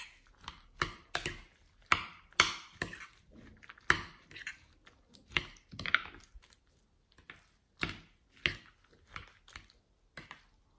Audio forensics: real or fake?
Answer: real